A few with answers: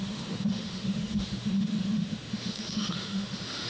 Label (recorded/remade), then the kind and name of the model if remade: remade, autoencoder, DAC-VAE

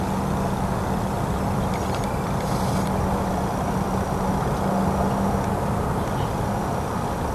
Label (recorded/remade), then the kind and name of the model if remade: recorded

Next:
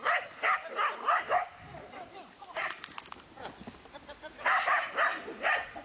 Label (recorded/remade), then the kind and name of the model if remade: recorded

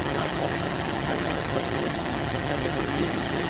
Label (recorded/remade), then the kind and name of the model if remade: remade, vocoder, HiFi-GAN